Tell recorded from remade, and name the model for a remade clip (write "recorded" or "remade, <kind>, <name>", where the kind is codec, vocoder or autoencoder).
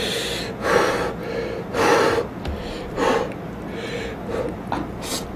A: recorded